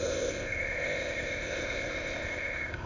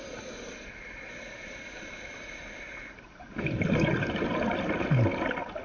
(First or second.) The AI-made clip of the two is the first